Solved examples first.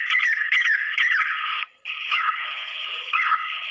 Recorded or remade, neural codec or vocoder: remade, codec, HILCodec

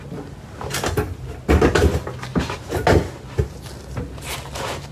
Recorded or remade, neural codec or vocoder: recorded